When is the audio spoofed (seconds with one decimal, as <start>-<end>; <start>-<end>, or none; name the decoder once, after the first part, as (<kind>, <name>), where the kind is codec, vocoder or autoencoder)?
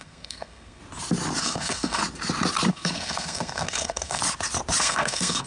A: 0.0-0.8 (codec, SNAC); 1.4-2.0; 2.7-4.2; 4.8-5.5